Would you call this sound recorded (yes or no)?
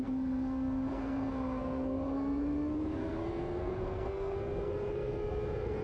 no